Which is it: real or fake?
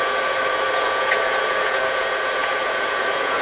fake